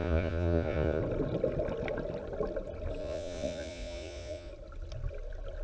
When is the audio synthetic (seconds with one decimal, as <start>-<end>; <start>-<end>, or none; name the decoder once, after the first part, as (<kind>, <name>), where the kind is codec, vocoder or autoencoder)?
0.0-1.0 (vocoder, Vocos); 3.0-4.5